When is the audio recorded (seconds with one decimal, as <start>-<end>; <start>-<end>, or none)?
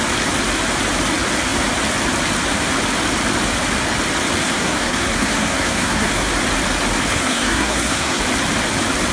0.0-4.4; 6.3-7.1; 8.2-9.1